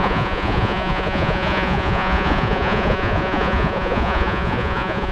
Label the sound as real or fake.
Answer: fake